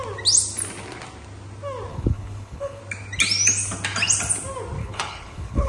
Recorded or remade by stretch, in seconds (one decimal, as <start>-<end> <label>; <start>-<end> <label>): 0.0-1.9 recorded; 1.9-2.8 remade; 2.8-4.8 recorded; 4.8-5.7 remade